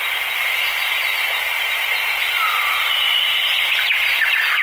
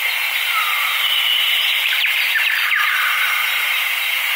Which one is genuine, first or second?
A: first